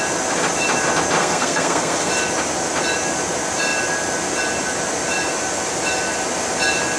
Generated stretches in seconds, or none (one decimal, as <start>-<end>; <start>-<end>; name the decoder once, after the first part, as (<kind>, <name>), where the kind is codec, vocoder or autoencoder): 1.2-2.1 (codec, SNAC)